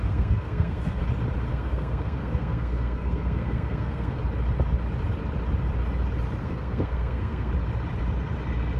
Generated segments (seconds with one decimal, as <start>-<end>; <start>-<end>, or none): 0.0-1.0; 1.5-4.2; 6.4-7.5